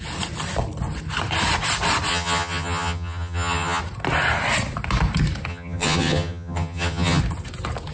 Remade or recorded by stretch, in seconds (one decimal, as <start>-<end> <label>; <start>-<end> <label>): 0.0-2.1 recorded; 2.1-3.8 remade; 3.8-5.5 recorded; 5.5-7.2 remade; 7.2-7.9 recorded